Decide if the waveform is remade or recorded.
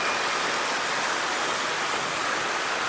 recorded